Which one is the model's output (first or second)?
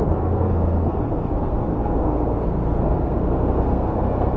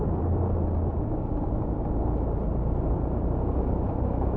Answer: first